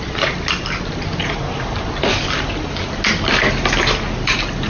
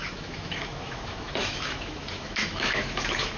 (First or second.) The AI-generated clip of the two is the second